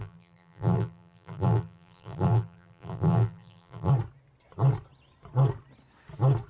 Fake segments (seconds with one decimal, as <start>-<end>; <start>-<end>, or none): 0.0-3.9